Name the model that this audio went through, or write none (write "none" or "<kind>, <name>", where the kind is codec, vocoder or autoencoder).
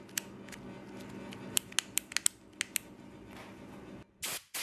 none